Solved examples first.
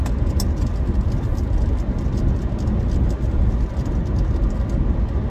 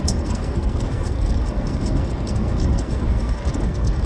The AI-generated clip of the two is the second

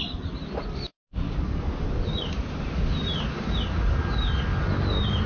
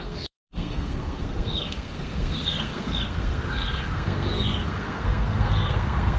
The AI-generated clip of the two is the second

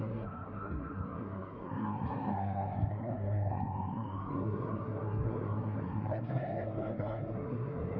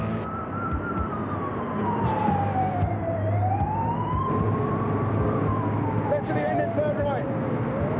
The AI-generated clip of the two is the first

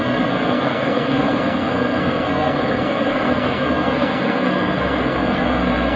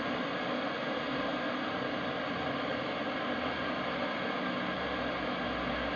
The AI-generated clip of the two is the first